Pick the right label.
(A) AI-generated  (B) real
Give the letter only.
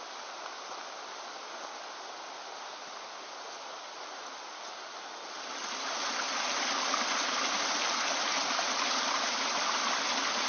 B